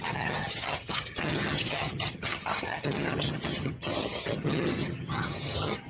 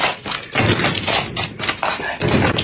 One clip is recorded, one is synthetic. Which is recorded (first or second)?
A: second